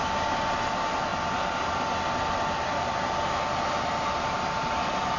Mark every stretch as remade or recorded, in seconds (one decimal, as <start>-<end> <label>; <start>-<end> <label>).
0.0-5.2 recorded